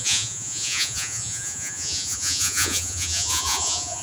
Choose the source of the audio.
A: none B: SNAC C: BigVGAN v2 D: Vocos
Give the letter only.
D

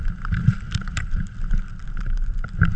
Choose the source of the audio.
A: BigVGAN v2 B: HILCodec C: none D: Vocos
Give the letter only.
C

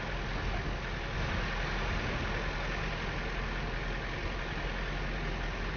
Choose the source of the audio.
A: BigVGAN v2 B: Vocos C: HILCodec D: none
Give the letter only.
D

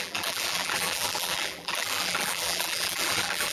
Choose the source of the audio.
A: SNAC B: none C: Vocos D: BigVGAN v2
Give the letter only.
D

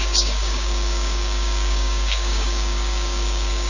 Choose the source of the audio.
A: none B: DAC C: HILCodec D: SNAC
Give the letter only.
B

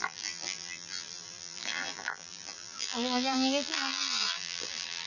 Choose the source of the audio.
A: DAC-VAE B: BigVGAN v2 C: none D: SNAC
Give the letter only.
B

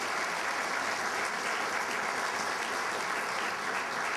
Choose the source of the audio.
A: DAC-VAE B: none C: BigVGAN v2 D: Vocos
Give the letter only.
B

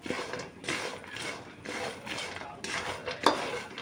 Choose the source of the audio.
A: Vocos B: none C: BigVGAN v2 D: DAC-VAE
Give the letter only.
B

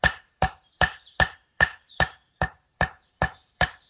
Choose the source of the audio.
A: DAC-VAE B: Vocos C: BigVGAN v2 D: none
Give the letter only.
C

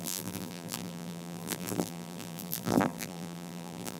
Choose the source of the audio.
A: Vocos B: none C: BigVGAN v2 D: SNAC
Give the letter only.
C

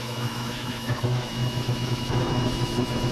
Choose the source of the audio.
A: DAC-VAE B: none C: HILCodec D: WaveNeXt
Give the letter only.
A